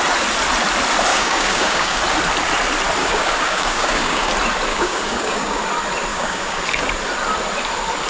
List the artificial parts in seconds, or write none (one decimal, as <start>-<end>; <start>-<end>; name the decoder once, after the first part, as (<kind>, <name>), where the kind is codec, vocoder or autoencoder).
1.1-2.0 (codec, DAC); 3.0-4.3; 4.7-5.6; 6.1-6.6